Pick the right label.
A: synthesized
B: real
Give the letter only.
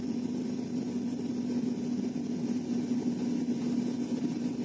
B